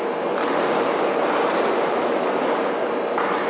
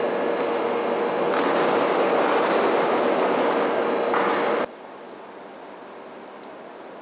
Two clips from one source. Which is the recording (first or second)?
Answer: second